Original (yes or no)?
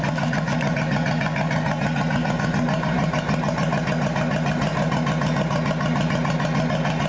yes